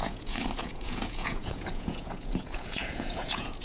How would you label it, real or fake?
fake